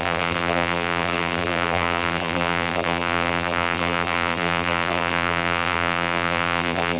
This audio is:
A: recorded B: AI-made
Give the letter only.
B